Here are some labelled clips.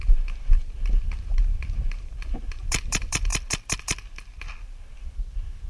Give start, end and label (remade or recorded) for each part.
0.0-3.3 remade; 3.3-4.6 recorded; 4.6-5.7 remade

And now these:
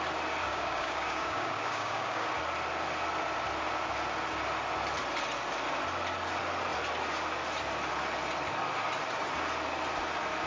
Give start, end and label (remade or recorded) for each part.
0.0-0.4 recorded; 0.4-2.3 remade; 2.3-10.5 recorded

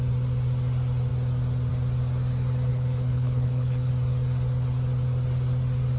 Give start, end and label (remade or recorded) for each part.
0.0-2.7 recorded; 2.7-3.9 remade; 3.9-6.0 recorded

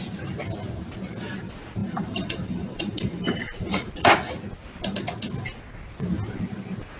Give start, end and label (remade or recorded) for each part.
0.0-1.8 recorded; 1.8-3.9 remade; 3.9-7.0 recorded

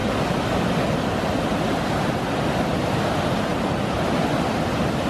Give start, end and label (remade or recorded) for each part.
0.0-5.1 recorded

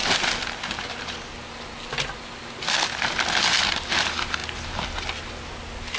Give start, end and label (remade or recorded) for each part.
0.0-6.0 recorded

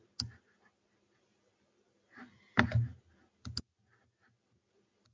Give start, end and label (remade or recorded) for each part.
0.0-5.1 recorded

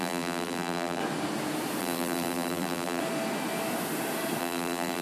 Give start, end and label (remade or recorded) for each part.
0.0-1.0 remade; 1.0-1.8 recorded; 1.8-3.0 remade; 3.0-4.4 recorded; 4.4-5.0 remade